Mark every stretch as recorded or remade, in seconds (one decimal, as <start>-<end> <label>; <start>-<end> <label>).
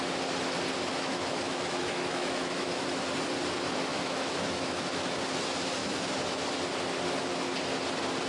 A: 0.0-0.9 recorded; 0.9-2.8 remade; 2.8-3.9 recorded; 3.9-5.2 remade; 5.2-5.8 recorded; 5.8-6.4 remade; 6.4-8.3 recorded